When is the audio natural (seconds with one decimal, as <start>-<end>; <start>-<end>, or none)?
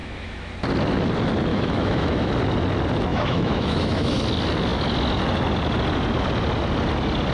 0.5-1.5; 2.3-3.1; 4.2-7.3